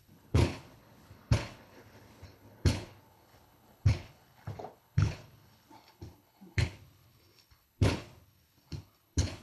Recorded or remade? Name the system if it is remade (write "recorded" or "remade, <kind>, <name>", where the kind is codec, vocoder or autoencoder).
remade, codec, HILCodec